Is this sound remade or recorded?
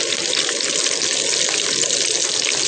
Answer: recorded